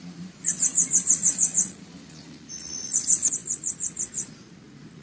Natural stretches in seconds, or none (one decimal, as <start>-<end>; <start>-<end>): none